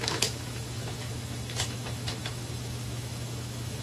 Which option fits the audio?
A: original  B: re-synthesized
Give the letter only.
B